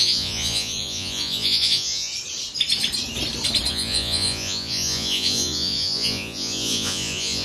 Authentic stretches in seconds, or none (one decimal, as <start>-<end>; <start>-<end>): 2.1-3.7